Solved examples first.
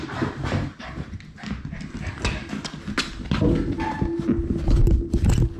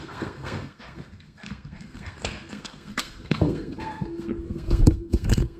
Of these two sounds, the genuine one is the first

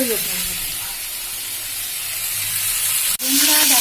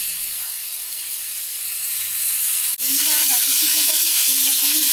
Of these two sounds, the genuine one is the first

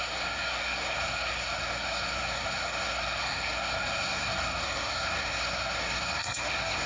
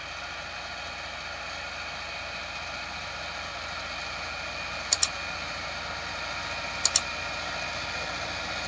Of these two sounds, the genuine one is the second